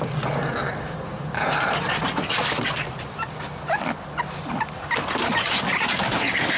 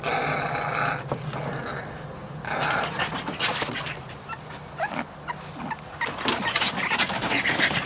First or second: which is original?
second